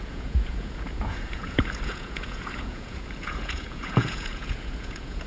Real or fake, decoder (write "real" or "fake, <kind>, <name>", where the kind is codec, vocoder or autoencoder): fake, vocoder, Vocos